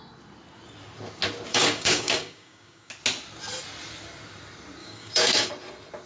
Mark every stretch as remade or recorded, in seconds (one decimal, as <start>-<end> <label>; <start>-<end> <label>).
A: 0.0-1.5 recorded; 1.5-2.9 remade; 2.9-4.8 recorded; 4.8-5.5 remade; 5.5-6.1 recorded